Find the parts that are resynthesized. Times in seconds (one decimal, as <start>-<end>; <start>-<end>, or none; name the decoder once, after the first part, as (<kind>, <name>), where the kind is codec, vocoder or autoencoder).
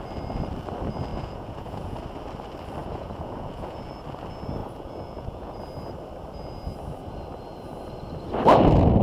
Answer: 1.1-2.0 (vocoder, Vocos); 2.8-3.9; 4.6-5.6